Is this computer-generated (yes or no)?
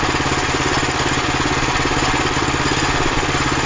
no